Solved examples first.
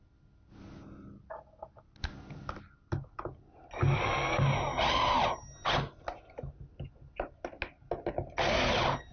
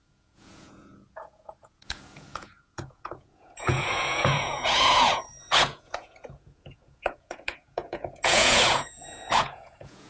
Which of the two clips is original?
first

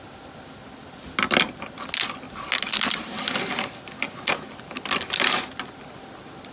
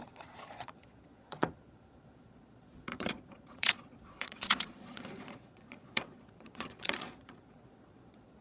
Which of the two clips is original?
first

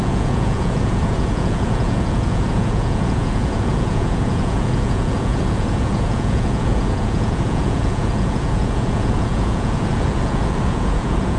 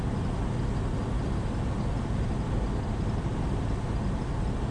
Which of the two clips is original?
second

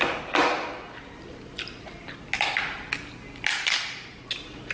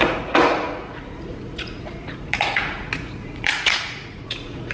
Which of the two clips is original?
first